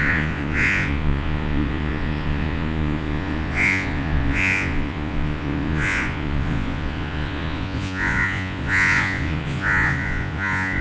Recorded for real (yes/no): no